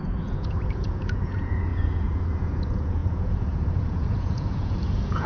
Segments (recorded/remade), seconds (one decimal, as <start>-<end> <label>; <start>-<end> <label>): 0.0-5.3 remade